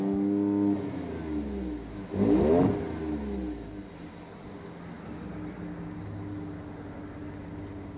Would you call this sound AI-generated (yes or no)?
no